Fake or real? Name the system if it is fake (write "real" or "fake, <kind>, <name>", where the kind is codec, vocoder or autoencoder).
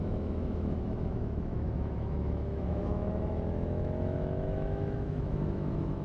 fake, autoencoder, DAC-VAE